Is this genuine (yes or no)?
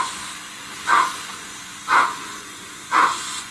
no